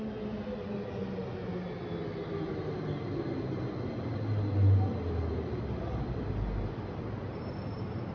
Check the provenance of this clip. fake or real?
real